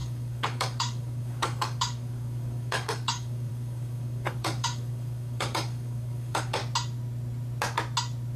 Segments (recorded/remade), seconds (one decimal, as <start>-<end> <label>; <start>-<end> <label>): 0.0-6.6 remade; 6.6-8.4 recorded